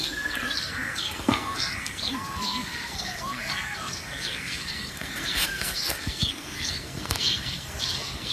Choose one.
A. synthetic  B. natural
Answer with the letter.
A